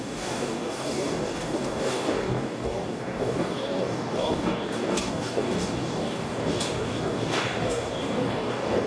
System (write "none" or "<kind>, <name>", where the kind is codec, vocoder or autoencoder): codec, DAC